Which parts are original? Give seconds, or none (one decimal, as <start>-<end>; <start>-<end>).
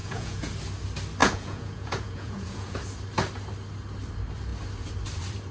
0.5-1.2; 2.8-5.5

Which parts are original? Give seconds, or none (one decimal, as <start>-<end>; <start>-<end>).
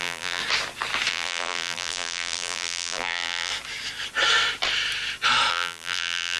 0.4-1.1; 3.5-5.5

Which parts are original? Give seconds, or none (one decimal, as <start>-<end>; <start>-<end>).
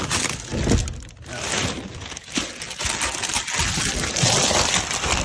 0.0-5.2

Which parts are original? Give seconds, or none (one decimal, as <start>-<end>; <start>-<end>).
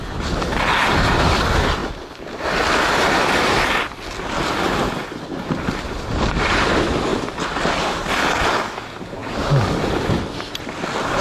0.0-11.2